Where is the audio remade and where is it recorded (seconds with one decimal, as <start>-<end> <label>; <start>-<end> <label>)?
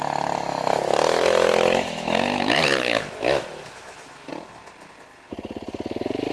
0.0-0.5 recorded; 0.5-4.3 remade; 4.3-6.3 recorded